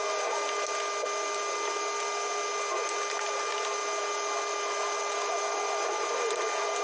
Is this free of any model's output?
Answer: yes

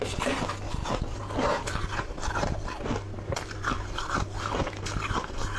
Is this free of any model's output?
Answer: yes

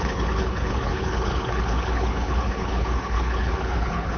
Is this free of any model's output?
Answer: no